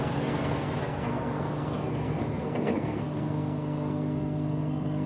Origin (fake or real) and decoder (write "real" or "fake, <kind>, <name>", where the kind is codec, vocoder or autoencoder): fake, codec, SNAC